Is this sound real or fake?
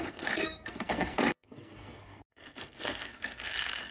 fake